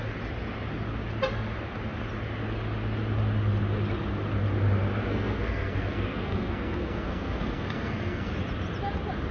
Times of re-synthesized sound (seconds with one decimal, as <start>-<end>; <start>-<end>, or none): 5.1-8.3